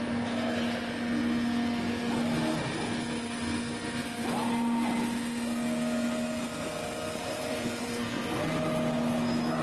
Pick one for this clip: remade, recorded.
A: recorded